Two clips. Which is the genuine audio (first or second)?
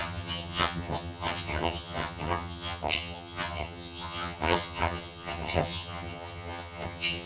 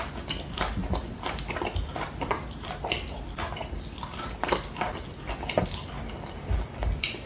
second